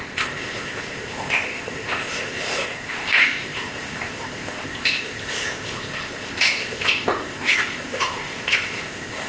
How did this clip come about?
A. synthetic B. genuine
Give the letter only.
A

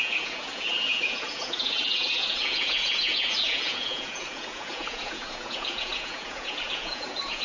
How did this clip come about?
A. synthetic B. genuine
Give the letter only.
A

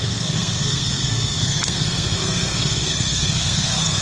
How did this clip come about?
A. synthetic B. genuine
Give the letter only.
A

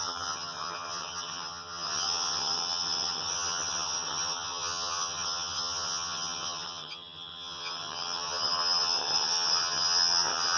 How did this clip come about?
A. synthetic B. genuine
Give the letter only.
A